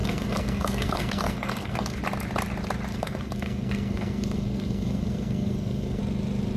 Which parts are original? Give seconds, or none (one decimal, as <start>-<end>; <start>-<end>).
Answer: 2.0-2.9; 6.0-6.6